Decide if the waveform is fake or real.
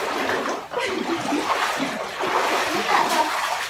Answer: real